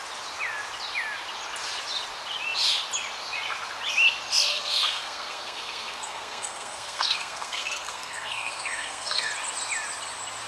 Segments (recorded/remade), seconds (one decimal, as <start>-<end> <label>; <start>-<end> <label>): 0.0-4.5 recorded; 4.5-9.3 remade; 9.3-10.5 recorded